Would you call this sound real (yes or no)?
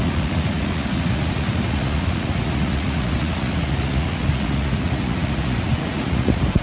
no